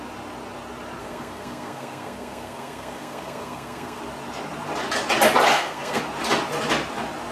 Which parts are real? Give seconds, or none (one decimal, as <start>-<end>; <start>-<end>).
0.0-1.0; 4.0-5.5; 6.0-7.3